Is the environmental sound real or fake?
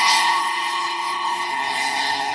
fake